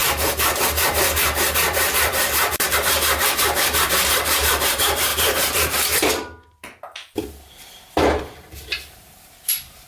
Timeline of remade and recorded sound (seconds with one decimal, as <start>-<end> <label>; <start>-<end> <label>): 0.0-9.9 remade